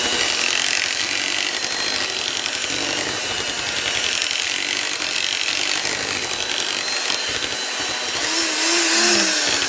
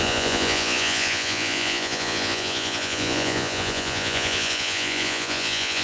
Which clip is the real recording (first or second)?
first